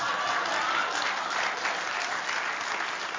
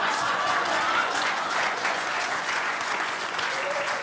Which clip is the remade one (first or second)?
second